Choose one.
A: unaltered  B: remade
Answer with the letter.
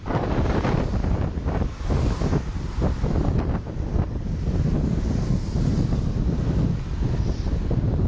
A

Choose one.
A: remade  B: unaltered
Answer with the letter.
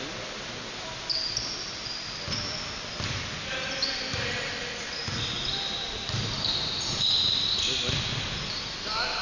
B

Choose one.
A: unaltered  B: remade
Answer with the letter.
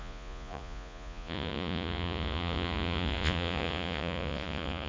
B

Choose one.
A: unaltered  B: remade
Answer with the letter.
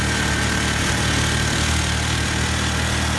A